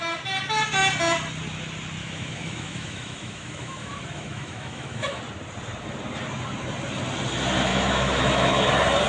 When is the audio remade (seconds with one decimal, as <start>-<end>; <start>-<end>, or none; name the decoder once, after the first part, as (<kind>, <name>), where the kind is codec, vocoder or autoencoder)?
2.0-5.2 (autoencoder, DAC-VAE); 7.7-8.7